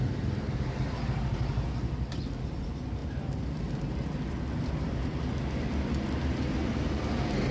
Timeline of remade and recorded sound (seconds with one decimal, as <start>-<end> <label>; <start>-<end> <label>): 0.0-7.5 recorded